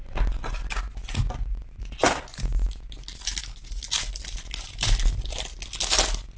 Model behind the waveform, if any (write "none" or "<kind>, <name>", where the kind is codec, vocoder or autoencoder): none